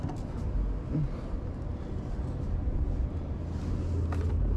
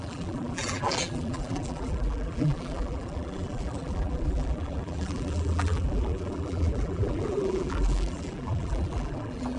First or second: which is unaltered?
first